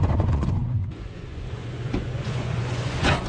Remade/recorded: remade